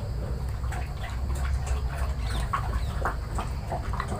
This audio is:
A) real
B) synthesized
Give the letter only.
A